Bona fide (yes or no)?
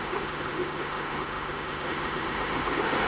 no